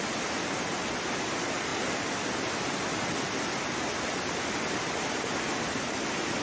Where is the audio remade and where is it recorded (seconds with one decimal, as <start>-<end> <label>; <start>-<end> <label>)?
0.0-6.4 recorded